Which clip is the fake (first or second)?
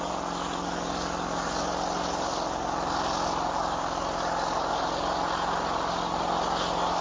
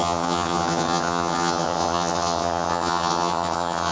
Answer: second